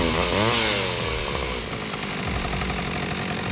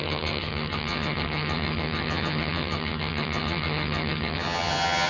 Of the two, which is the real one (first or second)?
first